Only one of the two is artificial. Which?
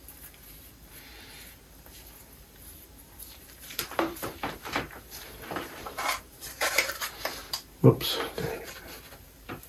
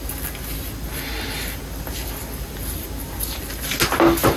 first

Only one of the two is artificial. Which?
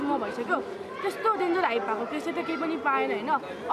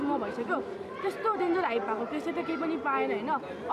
second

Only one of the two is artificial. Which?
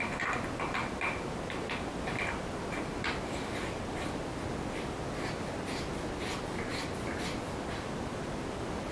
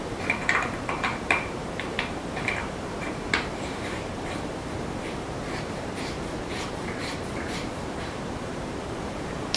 second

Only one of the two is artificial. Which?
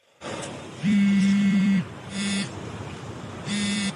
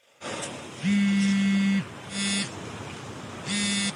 first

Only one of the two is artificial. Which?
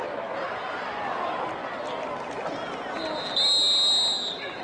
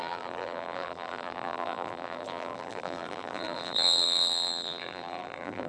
second